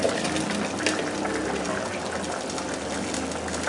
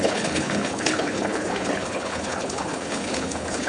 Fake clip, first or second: second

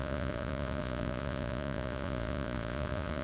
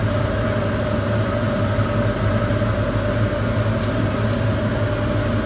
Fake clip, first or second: first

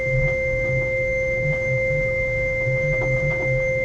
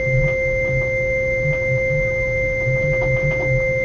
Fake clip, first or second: first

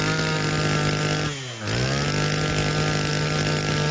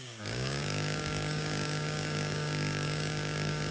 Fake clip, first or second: second